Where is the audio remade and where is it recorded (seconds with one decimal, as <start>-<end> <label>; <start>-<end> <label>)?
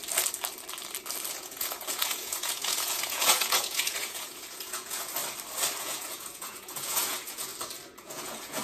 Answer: 0.0-1.3 recorded; 1.3-5.2 remade; 5.2-5.8 recorded; 5.8-7.5 remade; 7.5-8.0 recorded; 8.0-8.6 remade